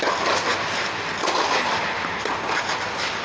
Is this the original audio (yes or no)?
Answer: yes